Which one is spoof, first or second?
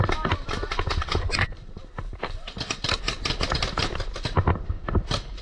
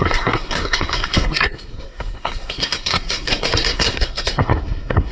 second